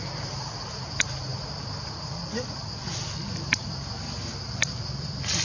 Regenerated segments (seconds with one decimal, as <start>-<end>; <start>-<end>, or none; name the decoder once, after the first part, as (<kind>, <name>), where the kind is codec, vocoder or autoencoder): none